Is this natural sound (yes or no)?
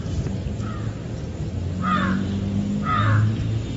yes